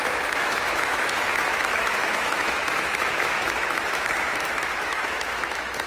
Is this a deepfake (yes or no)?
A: yes